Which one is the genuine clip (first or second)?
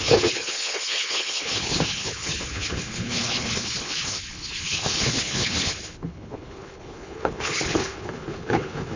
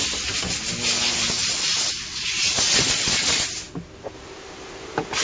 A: second